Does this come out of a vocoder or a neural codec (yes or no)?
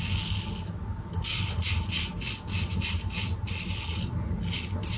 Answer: no